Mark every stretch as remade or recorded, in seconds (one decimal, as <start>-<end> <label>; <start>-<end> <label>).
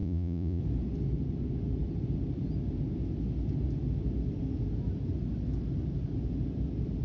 0.0-0.6 remade; 0.6-7.0 recorded